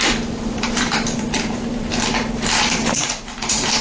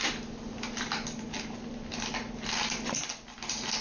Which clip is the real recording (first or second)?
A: second